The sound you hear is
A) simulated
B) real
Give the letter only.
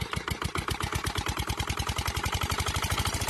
B